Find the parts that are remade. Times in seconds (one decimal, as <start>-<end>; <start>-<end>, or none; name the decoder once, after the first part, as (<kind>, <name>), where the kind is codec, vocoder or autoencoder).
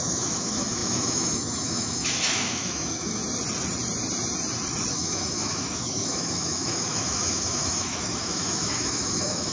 0.0-3.2 (autoencoder, DAC-VAE); 4.9-9.5